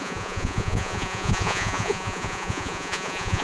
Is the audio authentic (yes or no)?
no